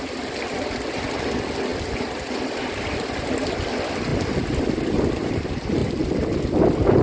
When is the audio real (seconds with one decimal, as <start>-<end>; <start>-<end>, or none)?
0.0-7.0